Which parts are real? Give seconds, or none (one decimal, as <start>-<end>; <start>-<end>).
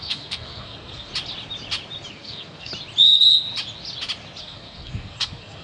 1.1-2.1; 2.7-4.4